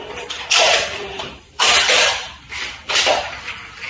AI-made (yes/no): yes